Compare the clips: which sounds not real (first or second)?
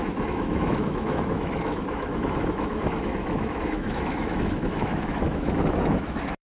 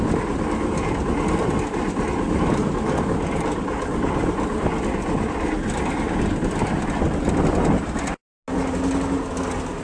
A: first